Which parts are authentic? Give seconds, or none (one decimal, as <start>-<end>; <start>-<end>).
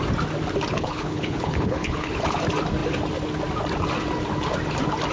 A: 0.0-0.7; 2.4-5.1